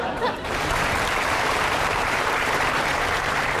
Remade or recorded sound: remade